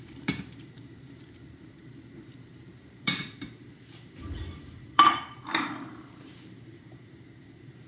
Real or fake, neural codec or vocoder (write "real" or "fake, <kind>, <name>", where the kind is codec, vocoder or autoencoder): fake, vocoder, BigVGAN v2